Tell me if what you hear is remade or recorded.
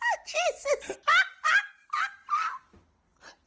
recorded